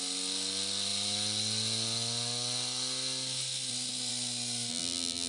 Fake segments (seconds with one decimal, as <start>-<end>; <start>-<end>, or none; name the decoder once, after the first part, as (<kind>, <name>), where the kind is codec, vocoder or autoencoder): 4.7-5.3 (vocoder, BigVGAN v2)